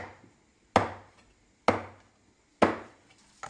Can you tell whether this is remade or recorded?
recorded